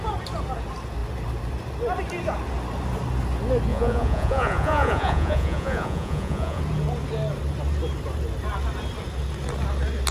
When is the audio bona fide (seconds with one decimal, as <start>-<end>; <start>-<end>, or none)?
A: 0.0-3.7; 6.6-10.1